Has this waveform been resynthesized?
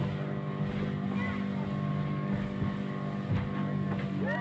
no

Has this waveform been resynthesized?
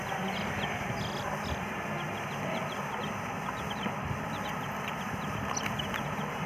no